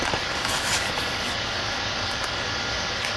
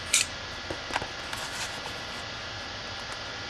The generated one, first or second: first